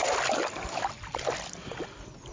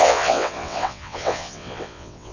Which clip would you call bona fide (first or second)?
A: first